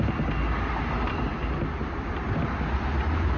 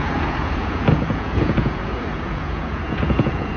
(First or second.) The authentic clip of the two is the first